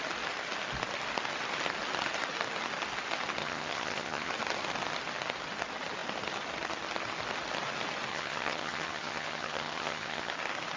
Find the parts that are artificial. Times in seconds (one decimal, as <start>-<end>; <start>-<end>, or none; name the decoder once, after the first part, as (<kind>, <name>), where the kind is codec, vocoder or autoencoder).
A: 3.4-4.3 (vocoder, HiFi-GAN); 8.1-10.3